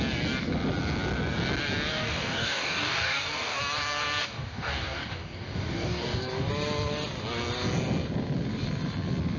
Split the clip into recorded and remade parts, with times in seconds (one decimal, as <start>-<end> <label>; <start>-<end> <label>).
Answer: 0.0-1.9 recorded; 1.9-3.6 remade; 3.6-4.2 recorded; 4.2-6.5 remade; 6.5-9.4 recorded